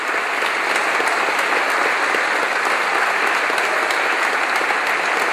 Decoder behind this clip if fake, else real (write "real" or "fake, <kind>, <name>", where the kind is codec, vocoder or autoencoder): real